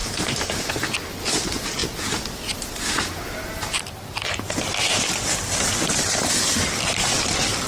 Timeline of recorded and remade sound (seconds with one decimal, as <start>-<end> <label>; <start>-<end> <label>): 0.0-0.7 remade; 0.7-7.7 recorded